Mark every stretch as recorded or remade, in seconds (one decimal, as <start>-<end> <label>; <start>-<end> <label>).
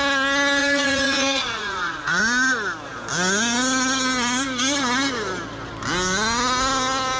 0.0-0.6 recorded; 0.6-2.2 remade; 2.2-7.2 recorded